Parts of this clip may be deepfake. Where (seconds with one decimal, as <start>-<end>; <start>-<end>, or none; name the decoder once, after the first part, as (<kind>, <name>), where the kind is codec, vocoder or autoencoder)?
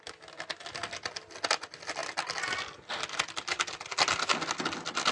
none